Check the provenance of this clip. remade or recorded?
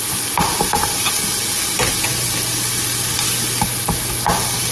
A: recorded